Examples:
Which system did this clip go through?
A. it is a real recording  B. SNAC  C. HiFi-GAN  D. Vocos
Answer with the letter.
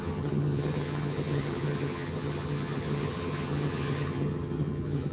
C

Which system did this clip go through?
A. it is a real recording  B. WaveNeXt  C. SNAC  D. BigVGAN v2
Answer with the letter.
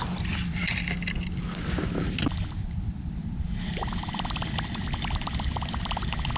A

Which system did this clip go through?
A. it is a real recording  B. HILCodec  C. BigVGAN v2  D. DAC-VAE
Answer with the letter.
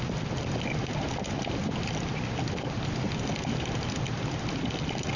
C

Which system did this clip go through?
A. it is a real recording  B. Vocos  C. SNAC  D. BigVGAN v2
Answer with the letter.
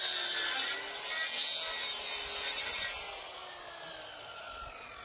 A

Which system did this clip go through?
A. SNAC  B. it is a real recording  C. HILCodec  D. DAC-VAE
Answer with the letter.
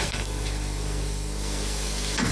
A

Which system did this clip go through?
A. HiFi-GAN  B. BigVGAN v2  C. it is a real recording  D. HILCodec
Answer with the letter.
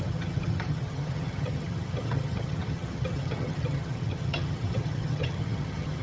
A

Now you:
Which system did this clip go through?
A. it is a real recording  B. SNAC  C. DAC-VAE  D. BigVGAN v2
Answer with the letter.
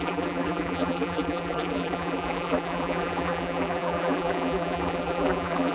D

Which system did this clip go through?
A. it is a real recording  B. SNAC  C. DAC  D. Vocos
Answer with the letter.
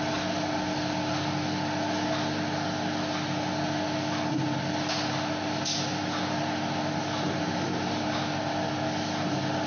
A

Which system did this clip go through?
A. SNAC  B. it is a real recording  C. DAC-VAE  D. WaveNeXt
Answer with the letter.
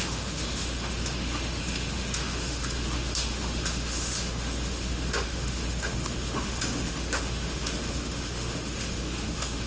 C